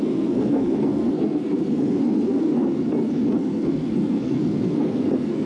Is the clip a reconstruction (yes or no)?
yes